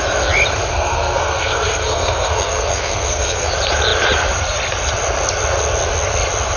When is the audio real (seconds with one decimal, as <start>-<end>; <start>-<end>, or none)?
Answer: 0.0-0.7; 3.5-6.6